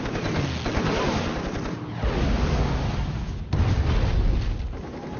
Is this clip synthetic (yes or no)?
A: no